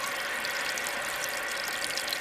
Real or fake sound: real